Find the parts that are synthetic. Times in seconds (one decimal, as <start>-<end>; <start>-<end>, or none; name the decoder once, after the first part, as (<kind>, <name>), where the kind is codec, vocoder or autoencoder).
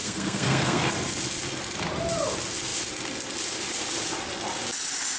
0.0-0.9 (codec, SNAC)